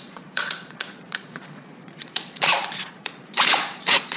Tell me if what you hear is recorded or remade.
remade